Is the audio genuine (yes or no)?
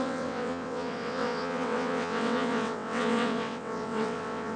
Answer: no